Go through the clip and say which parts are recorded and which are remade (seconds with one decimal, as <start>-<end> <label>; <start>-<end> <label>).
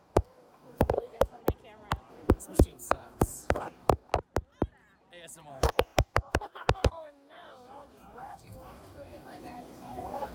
0.0-1.4 remade; 1.4-2.1 recorded; 2.1-4.1 remade; 4.1-5.5 recorded; 5.5-10.3 remade